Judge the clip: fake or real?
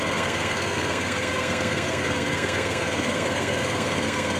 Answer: fake